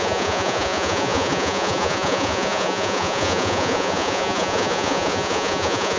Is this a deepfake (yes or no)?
yes